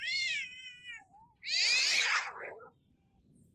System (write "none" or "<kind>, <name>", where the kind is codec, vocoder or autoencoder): vocoder, BigVGAN v2